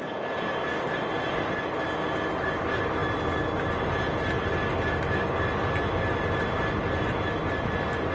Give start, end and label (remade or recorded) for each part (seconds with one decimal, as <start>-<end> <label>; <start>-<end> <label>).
0.0-8.1 recorded